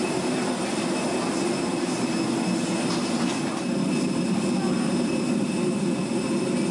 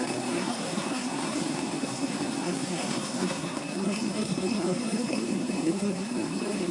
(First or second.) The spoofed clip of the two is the second